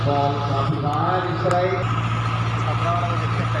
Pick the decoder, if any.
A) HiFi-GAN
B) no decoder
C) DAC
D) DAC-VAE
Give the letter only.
B